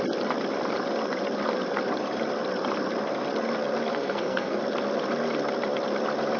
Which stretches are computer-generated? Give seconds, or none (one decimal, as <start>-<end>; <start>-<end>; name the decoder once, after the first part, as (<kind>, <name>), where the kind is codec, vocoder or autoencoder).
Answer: 3.9-4.6 (codec, SNAC)